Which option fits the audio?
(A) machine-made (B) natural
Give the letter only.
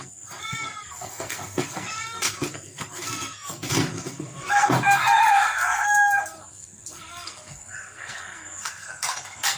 A